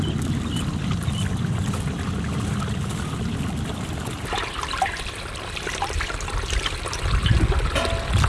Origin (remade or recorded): recorded